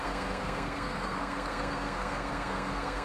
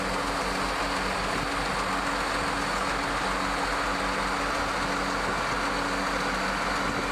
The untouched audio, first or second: second